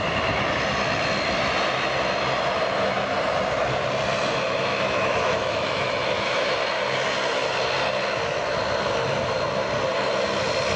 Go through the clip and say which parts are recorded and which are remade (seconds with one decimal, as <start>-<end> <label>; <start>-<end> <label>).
0.0-4.7 recorded; 4.7-6.5 remade; 6.5-10.8 recorded